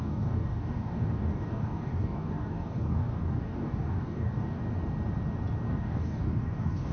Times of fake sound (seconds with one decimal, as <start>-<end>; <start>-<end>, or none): 0.0-4.6; 5.7-6.9